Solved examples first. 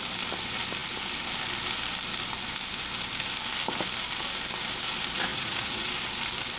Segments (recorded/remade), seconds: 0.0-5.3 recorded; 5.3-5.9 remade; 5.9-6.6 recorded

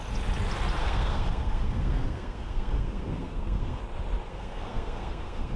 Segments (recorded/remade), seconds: 0.0-0.8 recorded; 0.8-3.8 remade; 3.8-4.3 recorded; 4.3-5.6 remade